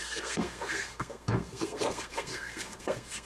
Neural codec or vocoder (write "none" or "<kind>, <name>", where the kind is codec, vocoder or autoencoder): codec, SNAC